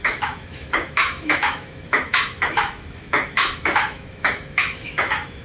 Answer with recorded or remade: remade